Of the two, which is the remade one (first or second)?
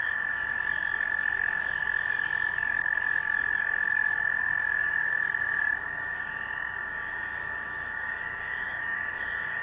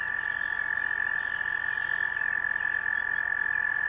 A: first